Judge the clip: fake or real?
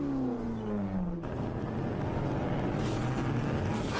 real